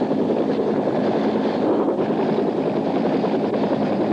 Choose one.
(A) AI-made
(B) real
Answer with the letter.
A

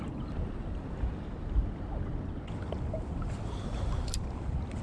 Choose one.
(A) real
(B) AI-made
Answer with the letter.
A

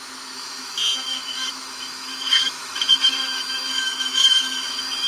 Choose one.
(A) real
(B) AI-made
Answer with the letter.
B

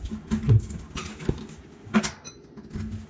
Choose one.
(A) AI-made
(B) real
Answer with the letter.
B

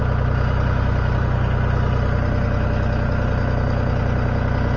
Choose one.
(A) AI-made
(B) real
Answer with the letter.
B